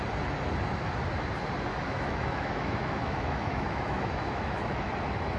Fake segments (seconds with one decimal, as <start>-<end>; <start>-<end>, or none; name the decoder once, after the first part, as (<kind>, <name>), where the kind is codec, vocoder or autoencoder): 1.7-4.9 (autoencoder, DAC-VAE)